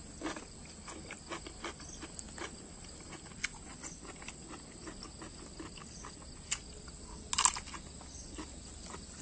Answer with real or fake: real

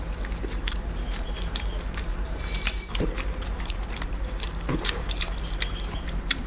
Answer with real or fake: fake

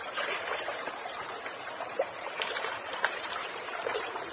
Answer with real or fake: fake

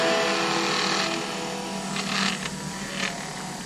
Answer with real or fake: real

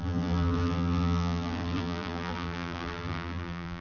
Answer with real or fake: fake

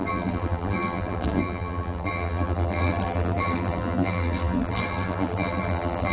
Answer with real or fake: fake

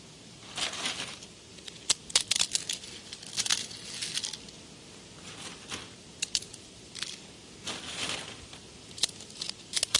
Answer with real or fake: real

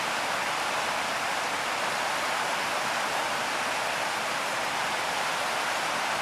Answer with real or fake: real